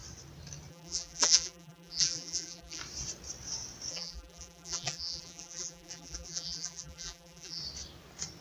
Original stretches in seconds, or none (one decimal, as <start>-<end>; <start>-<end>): 0.0-0.7; 2.8-3.9; 7.6-8.4